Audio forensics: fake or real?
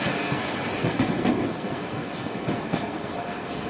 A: fake